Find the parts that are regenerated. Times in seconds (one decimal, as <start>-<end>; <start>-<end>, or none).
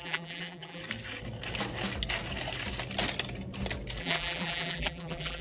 0.0-0.8; 4.0-5.4